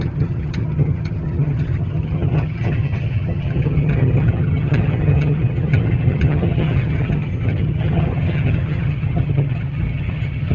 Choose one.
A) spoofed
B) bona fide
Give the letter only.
A